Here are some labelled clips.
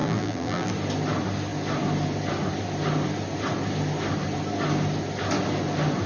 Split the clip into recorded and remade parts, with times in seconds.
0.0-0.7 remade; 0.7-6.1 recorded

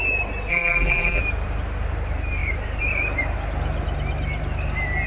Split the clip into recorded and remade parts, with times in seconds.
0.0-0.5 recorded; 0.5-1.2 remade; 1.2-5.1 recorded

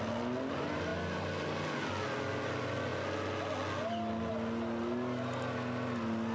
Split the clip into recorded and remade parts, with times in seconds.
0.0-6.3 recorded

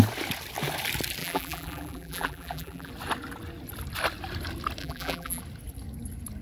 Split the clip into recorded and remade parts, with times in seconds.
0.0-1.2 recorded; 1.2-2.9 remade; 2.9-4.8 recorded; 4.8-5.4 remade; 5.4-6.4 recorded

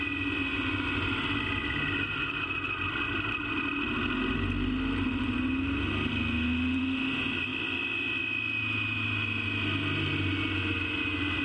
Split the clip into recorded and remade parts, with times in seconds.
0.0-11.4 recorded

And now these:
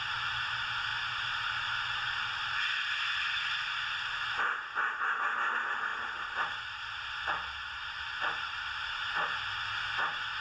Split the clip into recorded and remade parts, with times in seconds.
0.0-10.4 recorded

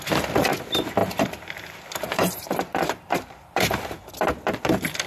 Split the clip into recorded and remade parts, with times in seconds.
0.0-1.0 recorded; 1.0-4.1 remade; 4.1-5.1 recorded